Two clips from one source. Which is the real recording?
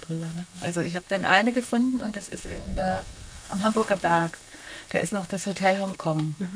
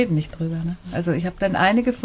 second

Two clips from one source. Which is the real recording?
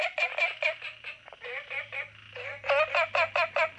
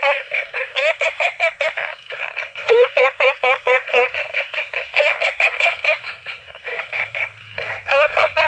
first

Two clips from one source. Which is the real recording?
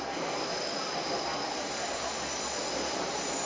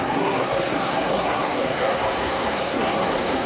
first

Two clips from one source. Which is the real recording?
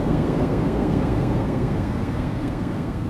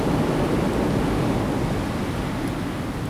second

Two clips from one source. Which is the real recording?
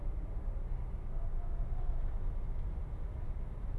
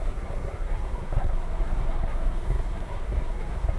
first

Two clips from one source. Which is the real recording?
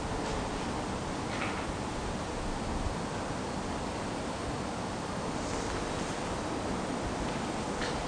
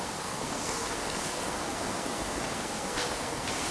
first